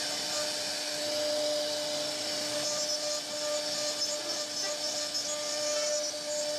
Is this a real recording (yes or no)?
yes